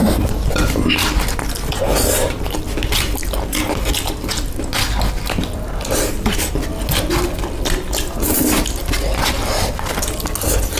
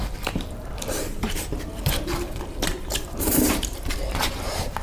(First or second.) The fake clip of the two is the second